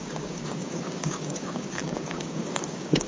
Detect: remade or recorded remade